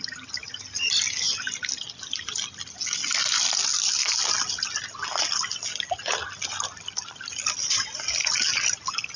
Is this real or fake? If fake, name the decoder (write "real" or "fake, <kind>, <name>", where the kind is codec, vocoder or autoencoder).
real